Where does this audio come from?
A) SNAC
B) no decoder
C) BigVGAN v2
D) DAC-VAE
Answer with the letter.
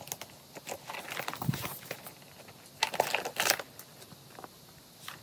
B